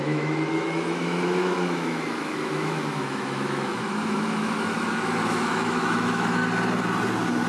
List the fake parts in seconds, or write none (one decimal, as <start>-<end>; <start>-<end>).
0.0-6.4